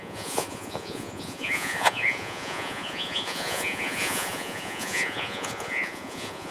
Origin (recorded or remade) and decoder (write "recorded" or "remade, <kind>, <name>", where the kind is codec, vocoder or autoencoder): remade, vocoder, Vocos